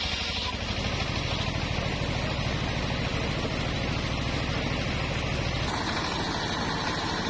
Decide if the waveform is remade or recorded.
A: recorded